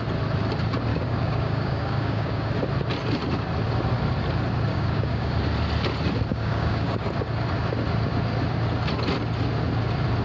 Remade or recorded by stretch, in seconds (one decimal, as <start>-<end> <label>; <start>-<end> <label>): 0.0-0.9 recorded; 0.9-2.5 remade; 2.5-4.7 recorded; 4.7-5.3 remade; 5.3-6.3 recorded; 6.3-7.0 remade; 7.0-10.2 recorded